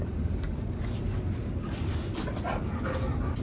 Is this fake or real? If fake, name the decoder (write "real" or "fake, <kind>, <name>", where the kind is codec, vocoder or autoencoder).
real